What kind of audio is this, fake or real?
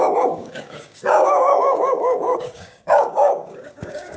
fake